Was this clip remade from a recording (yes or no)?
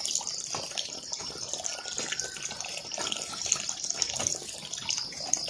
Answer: no